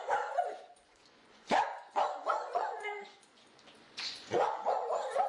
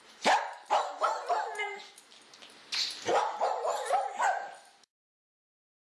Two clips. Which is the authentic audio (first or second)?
second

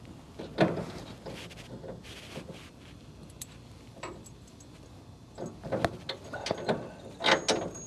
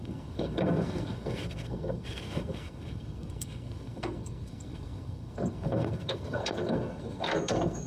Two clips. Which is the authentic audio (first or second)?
first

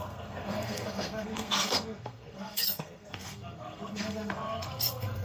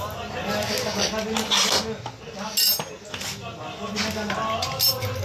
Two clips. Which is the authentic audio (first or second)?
second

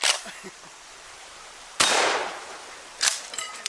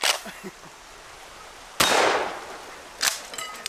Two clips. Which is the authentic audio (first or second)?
second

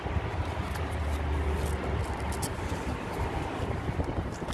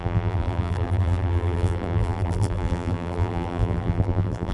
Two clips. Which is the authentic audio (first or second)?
first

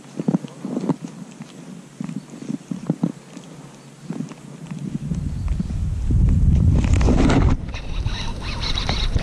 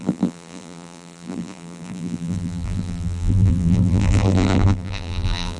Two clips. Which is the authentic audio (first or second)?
first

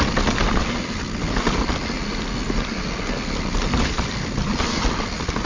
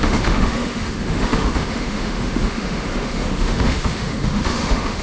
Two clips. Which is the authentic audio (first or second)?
first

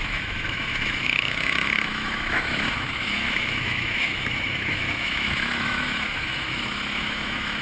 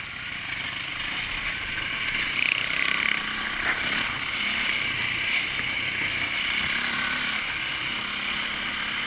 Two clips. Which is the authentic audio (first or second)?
second